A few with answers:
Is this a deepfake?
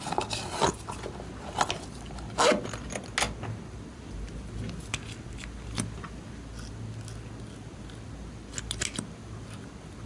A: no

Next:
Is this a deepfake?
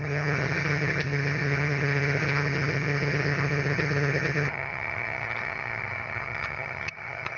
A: yes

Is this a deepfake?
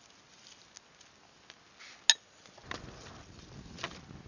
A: no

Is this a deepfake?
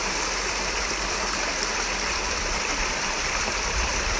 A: yes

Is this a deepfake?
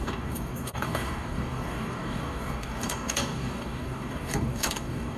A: yes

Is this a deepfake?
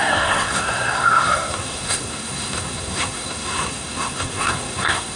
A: yes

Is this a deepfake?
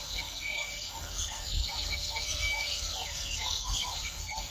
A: yes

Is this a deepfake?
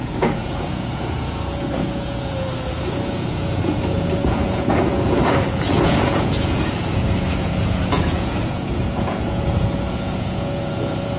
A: yes